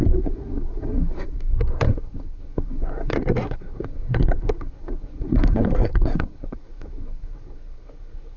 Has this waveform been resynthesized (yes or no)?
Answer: yes